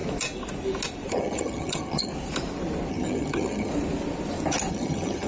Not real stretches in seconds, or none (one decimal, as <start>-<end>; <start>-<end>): 1.1-2.1; 2.9-3.7; 4.7-5.3